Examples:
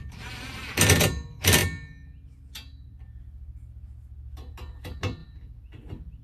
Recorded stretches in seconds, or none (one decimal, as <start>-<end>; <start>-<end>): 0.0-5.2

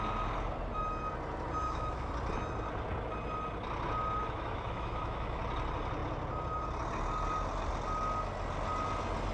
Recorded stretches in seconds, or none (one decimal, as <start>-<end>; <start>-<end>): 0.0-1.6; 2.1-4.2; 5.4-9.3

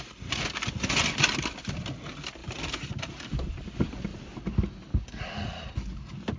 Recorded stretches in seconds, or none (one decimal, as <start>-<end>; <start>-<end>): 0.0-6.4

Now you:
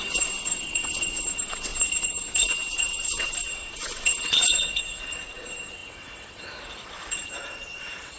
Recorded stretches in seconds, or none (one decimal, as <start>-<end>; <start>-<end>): none

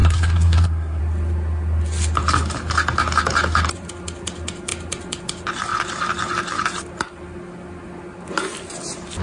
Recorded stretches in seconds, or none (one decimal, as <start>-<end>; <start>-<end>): 1.0-9.2

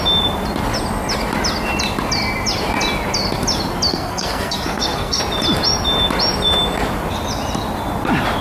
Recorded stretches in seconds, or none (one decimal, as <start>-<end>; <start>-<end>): 0.0-3.9; 5.2-8.4